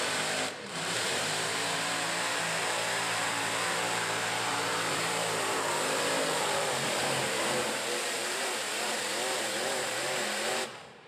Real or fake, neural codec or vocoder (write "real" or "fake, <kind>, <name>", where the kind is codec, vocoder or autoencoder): fake, vocoder, BigVGAN v2